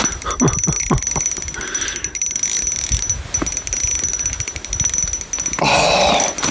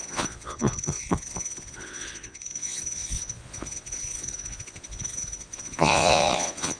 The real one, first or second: first